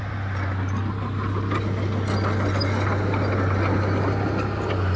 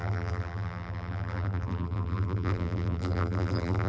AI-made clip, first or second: second